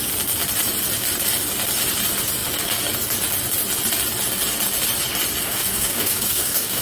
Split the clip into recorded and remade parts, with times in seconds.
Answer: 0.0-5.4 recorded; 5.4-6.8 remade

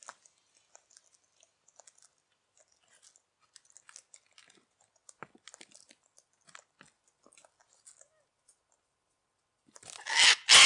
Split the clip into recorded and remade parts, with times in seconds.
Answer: 0.0-10.7 recorded

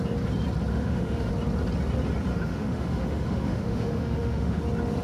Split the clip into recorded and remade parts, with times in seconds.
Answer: 0.0-0.7 recorded; 0.7-1.3 remade; 1.3-2.3 recorded; 2.3-4.6 remade; 4.6-5.0 recorded

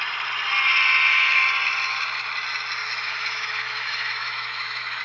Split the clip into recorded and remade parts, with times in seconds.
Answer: 0.0-2.8 recorded; 2.8-5.0 remade

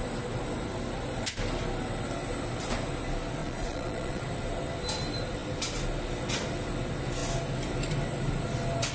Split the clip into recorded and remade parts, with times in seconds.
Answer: 0.0-3.4 recorded; 3.4-4.2 remade; 4.2-8.9 recorded

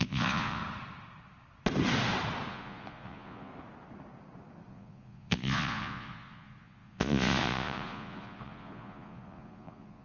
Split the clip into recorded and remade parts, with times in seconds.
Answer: 0.0-0.6 remade; 0.6-2.5 recorded; 2.5-3.5 remade; 3.5-4.7 recorded; 4.7-10.0 remade

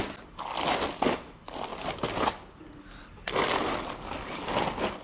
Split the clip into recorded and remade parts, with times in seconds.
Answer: 0.0-5.0 recorded